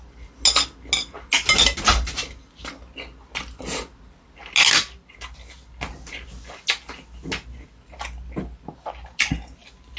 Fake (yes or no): no